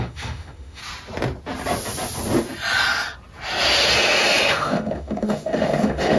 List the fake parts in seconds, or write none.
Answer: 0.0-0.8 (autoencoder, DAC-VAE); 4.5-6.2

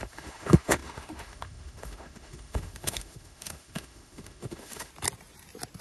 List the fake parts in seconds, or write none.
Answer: 0.0-4.9 (autoencoder, DAC-VAE)

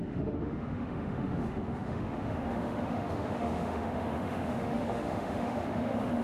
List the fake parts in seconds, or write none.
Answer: 0.0-6.2 (autoencoder, DAC-VAE)

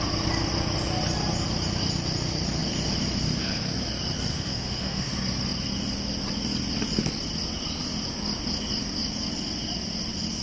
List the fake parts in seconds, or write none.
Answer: 4.3-5.1 (autoencoder, DAC-VAE)

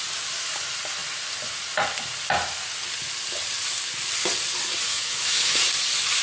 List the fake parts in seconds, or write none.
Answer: 4.9-5.6 (autoencoder, DAC-VAE)

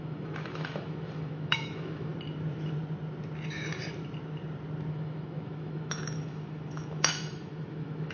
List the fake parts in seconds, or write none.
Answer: 0.0-2.1 (autoencoder, DAC-VAE); 4.9-8.1

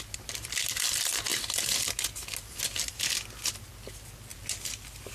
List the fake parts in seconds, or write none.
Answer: none

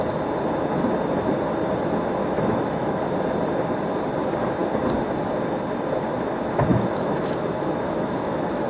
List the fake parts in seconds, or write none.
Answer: 2.2-3.0 (autoencoder, DAC-VAE); 6.7-8.7